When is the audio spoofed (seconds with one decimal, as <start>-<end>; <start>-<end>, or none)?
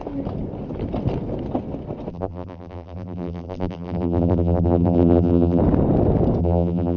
2.1-5.6; 6.4-7.0